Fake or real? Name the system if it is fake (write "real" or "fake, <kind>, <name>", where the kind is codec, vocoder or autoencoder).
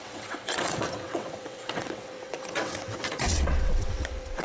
fake, vocoder, WaveNeXt